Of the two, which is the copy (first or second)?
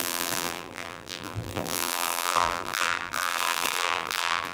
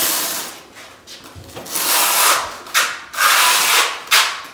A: first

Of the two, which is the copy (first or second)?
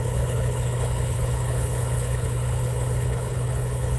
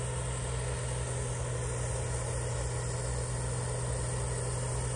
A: first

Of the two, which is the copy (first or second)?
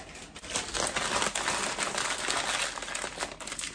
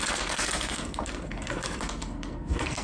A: second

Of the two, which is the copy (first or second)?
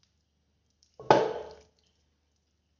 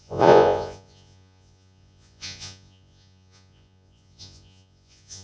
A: second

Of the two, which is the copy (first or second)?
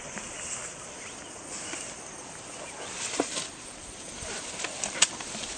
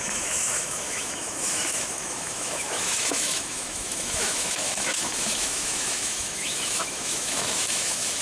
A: second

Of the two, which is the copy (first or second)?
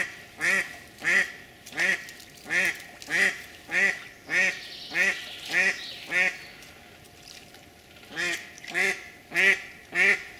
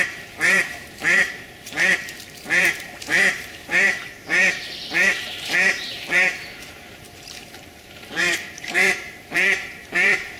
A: second